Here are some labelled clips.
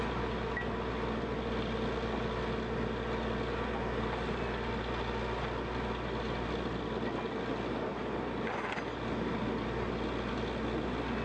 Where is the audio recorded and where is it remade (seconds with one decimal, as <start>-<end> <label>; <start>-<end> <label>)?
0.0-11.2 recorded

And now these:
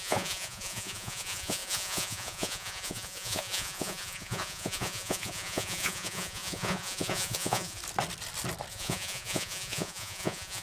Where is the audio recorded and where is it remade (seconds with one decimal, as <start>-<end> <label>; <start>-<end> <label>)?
0.0-7.8 remade; 7.8-8.7 recorded; 8.7-10.6 remade

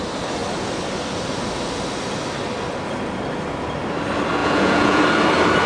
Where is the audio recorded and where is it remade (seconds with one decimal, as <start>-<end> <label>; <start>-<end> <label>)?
0.0-4.4 recorded; 4.4-5.0 remade; 5.0-5.7 recorded

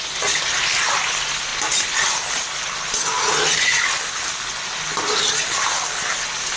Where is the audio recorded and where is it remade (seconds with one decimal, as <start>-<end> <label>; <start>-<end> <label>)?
0.0-6.6 recorded

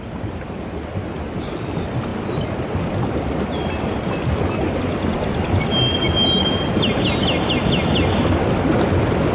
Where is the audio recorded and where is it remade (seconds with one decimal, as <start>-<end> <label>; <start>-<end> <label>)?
0.0-9.3 recorded